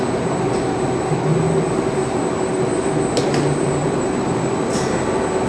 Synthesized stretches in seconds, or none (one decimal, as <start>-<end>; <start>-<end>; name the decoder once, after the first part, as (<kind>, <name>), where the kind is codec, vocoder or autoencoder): 3.8-4.7 (vocoder, BigVGAN v2)

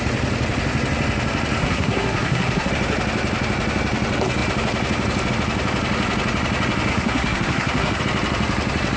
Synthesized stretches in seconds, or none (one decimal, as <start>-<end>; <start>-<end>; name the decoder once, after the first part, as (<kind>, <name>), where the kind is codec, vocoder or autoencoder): 1.6-2.7 (codec, SNAC); 6.9-8.0

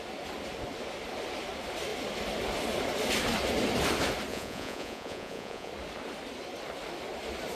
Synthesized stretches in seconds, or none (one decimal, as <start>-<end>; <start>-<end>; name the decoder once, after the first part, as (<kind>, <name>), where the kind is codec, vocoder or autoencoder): 4.3-5.7 (vocoder, Vocos)

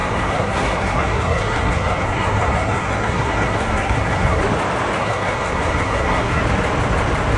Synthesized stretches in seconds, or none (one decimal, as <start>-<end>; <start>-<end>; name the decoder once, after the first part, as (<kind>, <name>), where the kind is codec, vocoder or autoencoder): 0.0-4.4 (codec, SNAC); 5.0-6.4

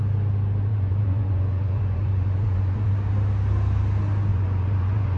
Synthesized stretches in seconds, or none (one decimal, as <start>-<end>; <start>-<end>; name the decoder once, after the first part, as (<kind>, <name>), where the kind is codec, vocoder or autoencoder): 0.7-2.9 (vocoder, Vocos); 4.3-5.2